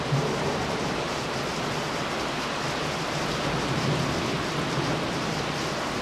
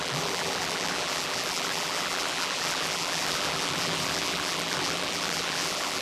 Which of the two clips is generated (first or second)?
second